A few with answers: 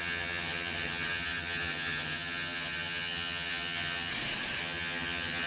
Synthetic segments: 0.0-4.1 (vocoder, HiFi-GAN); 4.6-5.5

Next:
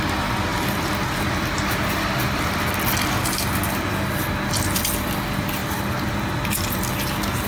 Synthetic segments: none